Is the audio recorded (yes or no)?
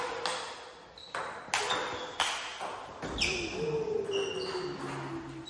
yes